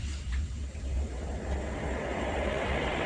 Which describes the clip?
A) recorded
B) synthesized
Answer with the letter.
B